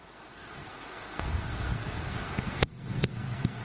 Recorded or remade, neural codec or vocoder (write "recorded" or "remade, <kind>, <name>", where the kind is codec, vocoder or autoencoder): remade, codec, SNAC